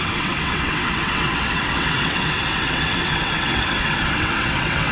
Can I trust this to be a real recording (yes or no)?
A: no